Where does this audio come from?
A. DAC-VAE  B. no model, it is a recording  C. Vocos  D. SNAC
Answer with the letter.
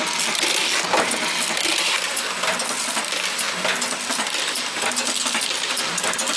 B